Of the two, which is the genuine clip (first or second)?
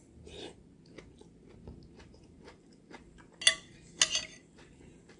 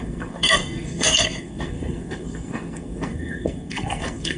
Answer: first